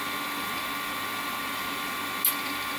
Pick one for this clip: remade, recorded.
recorded